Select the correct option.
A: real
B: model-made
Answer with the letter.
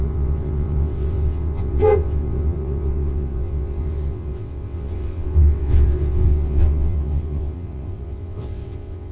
B